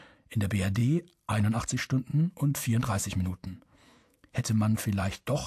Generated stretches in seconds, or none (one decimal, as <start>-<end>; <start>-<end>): 2.1-4.4